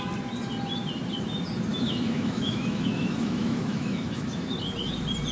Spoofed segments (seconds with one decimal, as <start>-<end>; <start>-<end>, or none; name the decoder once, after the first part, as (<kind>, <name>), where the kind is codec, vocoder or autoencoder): 1.7-4.5 (autoencoder, DAC-VAE)